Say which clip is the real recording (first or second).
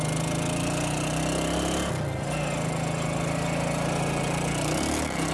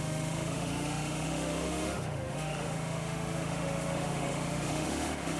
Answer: first